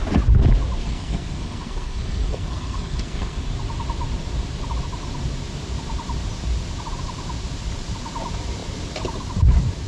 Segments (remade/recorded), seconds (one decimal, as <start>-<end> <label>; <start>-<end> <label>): 0.0-0.8 recorded; 0.8-3.5 remade; 3.5-9.9 recorded